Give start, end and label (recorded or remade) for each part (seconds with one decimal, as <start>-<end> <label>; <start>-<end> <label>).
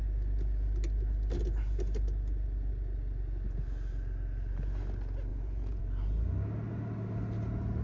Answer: 0.0-5.3 recorded; 5.3-5.8 remade; 5.8-7.8 recorded